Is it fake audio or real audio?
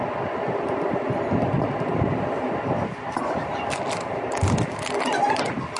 real